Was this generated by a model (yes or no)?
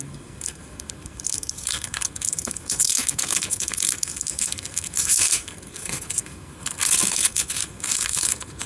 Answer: yes